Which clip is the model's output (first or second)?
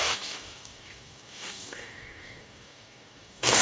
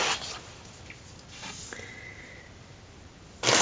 first